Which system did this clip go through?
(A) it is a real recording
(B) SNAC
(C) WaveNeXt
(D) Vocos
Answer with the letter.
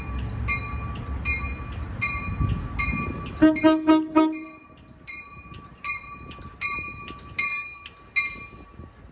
A